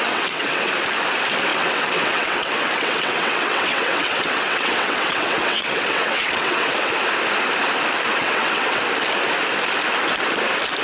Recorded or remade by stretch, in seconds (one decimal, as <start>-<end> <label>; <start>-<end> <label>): 0.0-0.7 remade; 0.7-1.5 recorded; 1.5-6.7 remade; 6.7-8.1 recorded; 8.1-8.8 remade; 8.8-10.8 recorded